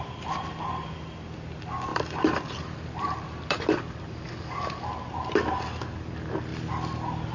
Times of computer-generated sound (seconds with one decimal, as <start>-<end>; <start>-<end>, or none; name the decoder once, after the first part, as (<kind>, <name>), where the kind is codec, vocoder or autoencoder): 1.9-6.1 (vocoder, BigVGAN v2); 6.5-7.3